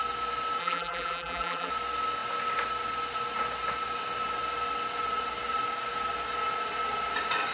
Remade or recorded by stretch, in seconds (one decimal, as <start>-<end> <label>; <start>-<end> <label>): 0.0-0.6 recorded; 0.6-1.7 remade; 1.7-7.5 recorded